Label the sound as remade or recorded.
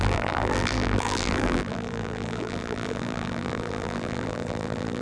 remade